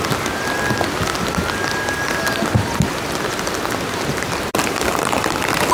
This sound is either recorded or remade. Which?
recorded